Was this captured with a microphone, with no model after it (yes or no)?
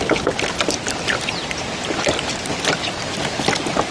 yes